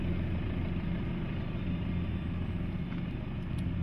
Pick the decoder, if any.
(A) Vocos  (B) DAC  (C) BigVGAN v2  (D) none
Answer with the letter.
C